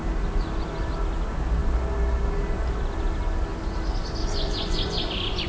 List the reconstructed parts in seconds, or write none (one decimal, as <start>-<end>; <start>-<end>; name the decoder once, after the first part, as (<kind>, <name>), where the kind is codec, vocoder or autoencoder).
4.2-5.5 (vocoder, Vocos)